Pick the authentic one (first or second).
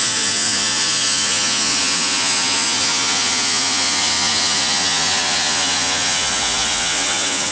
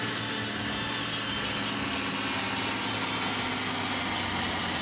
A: second